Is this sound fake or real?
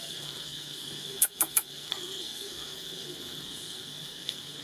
fake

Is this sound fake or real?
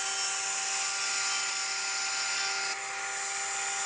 real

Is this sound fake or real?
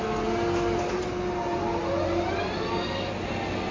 real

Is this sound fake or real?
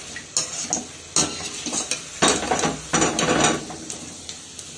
real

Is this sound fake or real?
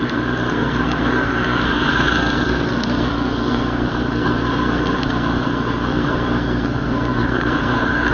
fake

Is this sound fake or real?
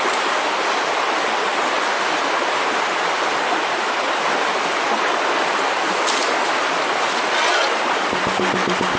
real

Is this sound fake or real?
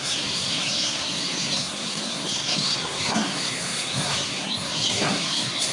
fake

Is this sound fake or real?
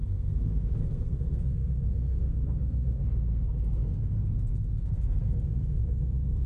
fake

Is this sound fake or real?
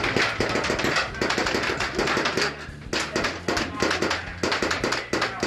real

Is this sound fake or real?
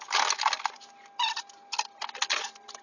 real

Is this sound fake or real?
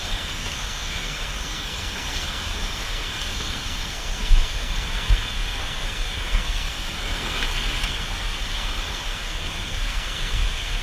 fake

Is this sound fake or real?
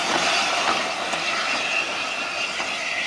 real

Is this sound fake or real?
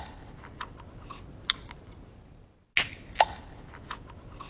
real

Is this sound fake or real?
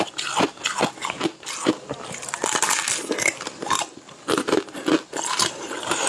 real